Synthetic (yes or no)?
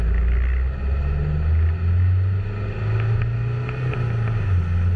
no